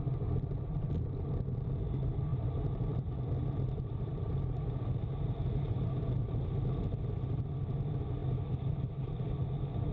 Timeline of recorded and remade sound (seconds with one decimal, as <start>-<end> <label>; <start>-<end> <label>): 0.0-2.3 recorded; 2.3-6.4 remade; 6.4-9.9 recorded